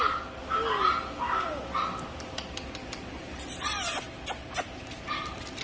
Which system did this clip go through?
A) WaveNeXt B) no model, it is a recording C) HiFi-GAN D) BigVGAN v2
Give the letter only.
B